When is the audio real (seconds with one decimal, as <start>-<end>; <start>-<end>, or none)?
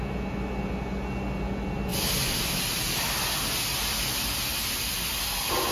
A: 0.0-1.9; 3.0-5.7